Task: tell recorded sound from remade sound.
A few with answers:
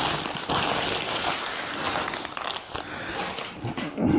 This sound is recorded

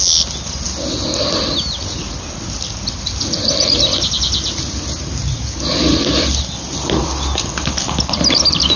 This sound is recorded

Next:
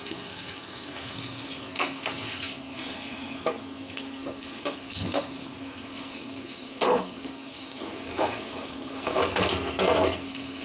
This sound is remade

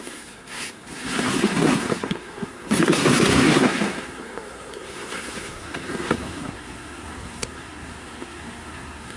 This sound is remade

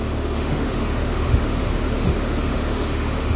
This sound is remade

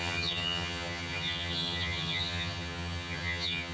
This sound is remade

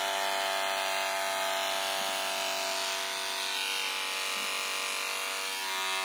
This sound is recorded